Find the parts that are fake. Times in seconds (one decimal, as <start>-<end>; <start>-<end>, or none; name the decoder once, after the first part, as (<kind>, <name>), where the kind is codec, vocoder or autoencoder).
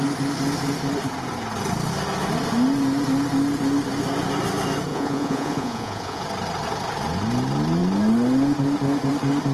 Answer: 4.9-6.2 (vocoder, Vocos)